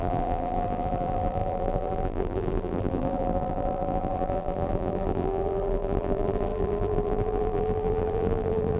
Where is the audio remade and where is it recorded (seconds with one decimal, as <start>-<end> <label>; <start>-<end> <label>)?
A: 0.0-8.8 remade